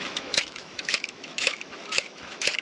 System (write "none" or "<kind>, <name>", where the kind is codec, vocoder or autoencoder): autoencoder, DAC-VAE